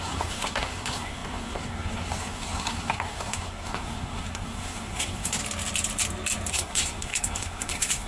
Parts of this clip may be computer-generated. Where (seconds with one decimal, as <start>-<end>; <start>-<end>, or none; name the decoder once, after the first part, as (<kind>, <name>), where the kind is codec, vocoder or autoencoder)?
0.0-5.4 (codec, SNAC); 6.5-8.1